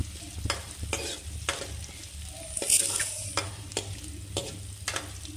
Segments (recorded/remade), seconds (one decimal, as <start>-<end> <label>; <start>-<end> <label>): 0.0-5.4 recorded